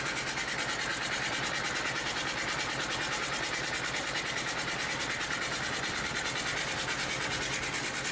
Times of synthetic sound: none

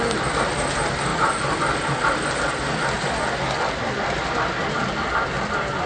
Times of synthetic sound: none

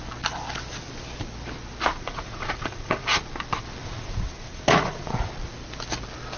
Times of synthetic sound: 1.9-3.2 (vocoder, Vocos); 3.8-5.3

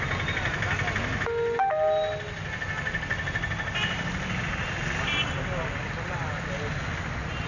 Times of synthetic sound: none

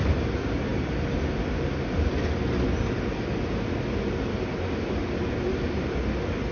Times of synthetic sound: none